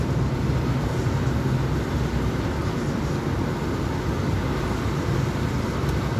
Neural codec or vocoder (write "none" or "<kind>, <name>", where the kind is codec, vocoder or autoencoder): none